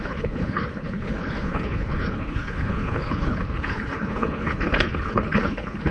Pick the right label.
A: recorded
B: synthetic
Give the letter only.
B